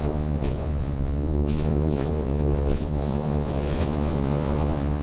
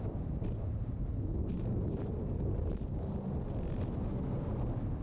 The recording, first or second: second